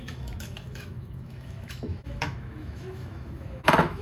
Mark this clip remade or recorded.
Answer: remade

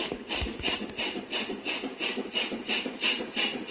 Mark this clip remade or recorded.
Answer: remade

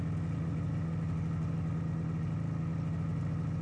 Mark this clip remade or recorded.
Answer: recorded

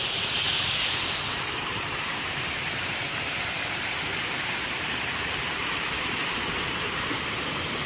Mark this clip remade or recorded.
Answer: remade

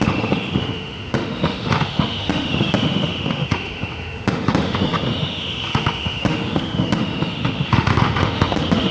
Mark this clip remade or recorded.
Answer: remade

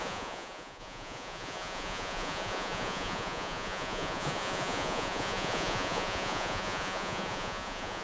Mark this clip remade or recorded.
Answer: remade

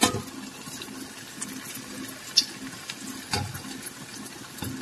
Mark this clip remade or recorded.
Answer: recorded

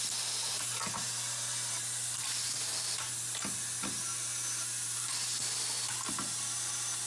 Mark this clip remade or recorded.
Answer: recorded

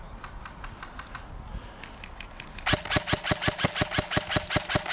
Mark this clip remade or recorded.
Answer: recorded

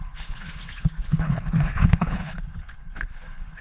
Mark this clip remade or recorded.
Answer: remade